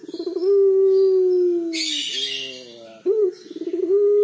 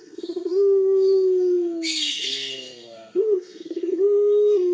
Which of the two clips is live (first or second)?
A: first